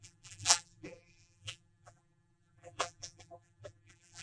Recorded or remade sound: remade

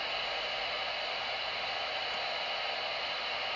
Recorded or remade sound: recorded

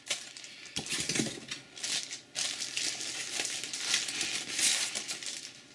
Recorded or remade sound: recorded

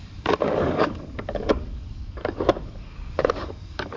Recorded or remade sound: remade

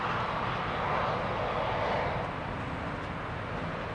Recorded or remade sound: recorded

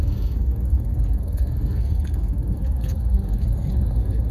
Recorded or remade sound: remade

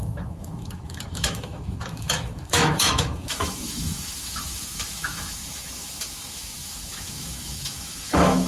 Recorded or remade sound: remade